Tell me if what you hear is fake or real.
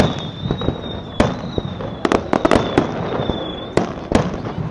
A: real